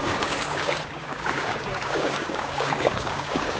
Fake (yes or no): yes